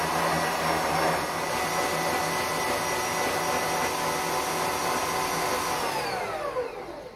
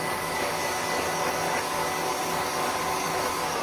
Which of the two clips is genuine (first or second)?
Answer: first